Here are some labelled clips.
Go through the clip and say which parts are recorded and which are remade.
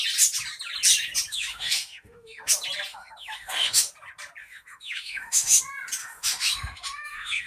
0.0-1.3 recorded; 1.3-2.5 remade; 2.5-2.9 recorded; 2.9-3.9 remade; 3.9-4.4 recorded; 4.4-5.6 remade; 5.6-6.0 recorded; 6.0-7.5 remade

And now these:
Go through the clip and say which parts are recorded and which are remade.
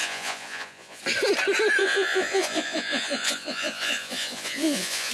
0.0-1.0 remade; 1.0-1.8 recorded; 1.8-5.1 remade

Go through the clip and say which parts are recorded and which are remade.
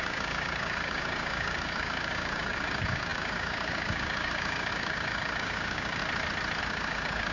0.0-6.0 remade; 6.0-6.6 recorded; 6.6-7.3 remade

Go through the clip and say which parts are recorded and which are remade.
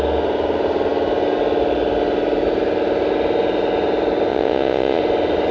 0.0-4.3 recorded; 4.3-5.0 remade; 5.0-5.5 recorded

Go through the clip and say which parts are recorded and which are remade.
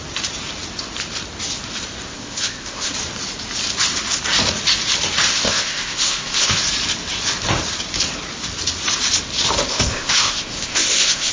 0.0-2.1 recorded; 2.1-2.9 remade; 2.9-5.3 recorded; 5.3-6.6 remade; 6.6-9.7 recorded; 9.7-11.3 remade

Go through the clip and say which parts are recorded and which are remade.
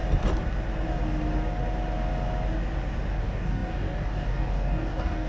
0.0-3.2 recorded; 3.2-5.3 remade